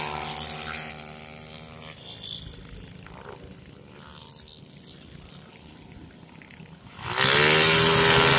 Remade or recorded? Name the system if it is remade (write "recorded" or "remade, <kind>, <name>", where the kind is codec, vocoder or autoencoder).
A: recorded